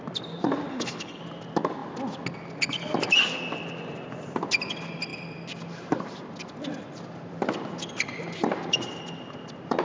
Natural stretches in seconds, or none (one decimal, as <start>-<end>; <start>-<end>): 0.0-0.7; 1.2-9.8